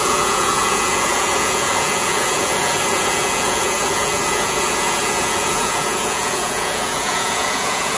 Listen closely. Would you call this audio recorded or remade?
remade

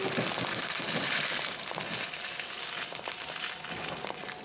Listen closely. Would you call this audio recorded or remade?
recorded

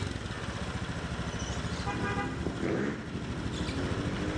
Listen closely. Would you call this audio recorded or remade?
recorded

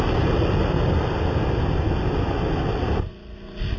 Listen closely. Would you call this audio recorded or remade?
recorded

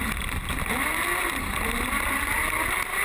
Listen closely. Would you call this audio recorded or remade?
recorded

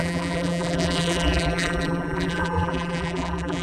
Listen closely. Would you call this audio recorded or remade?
remade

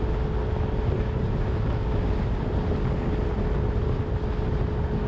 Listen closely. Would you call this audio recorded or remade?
recorded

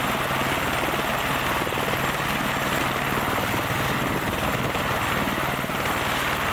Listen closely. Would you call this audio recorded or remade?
recorded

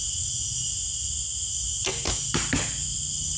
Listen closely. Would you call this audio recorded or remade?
recorded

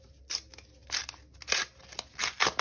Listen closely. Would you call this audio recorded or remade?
recorded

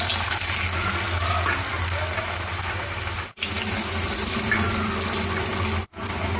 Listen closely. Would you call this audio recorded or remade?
recorded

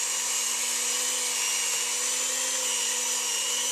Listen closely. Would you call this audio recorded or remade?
recorded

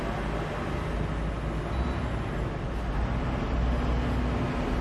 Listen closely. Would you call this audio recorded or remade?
recorded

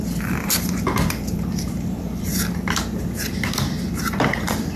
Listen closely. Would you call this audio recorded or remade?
remade